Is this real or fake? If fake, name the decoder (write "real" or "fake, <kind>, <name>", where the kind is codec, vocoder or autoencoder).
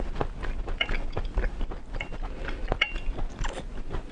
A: real